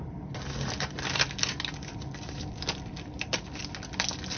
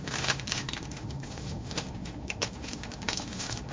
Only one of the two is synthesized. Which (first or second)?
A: second